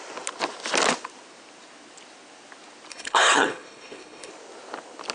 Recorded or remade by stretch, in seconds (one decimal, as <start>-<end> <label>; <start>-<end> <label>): 0.0-2.9 recorded; 2.9-4.3 remade; 4.3-5.1 recorded